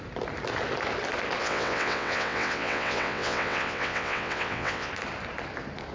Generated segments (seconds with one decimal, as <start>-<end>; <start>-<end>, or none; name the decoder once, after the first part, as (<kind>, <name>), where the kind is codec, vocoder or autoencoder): 1.4-4.9 (vocoder, WaveNeXt)